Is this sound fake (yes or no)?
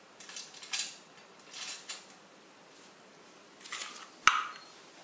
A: no